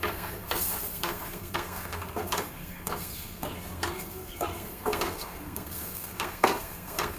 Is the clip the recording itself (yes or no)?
no